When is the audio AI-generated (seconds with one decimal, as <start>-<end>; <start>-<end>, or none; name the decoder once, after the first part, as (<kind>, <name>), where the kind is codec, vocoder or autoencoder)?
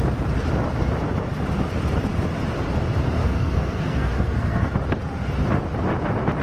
3.2-4.7 (codec, SNAC)